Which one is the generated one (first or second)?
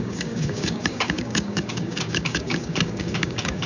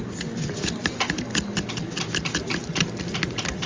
first